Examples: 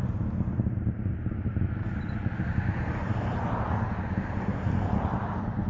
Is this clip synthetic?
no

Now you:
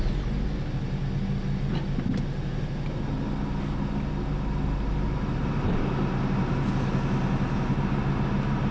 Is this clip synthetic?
no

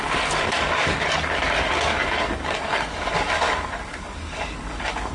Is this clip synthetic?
yes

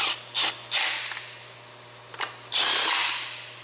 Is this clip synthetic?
no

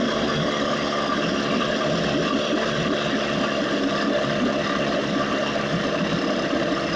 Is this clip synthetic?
no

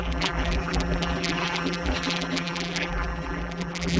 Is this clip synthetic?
yes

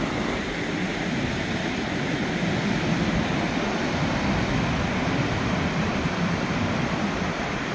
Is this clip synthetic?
no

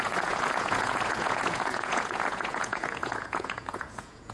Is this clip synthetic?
yes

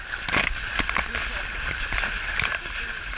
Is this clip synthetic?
no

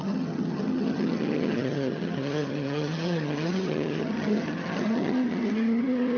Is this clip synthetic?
yes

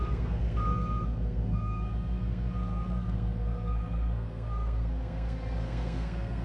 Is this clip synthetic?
yes